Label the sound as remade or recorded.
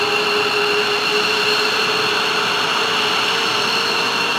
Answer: recorded